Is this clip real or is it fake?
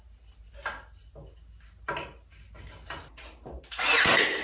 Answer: real